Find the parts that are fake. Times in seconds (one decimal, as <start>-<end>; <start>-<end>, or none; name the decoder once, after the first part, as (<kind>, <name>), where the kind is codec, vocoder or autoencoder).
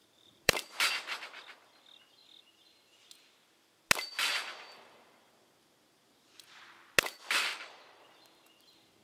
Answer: 0.0-0.9 (vocoder, BigVGAN v2); 7.5-8.0